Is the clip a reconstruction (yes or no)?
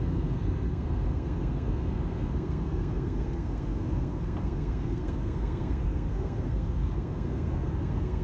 yes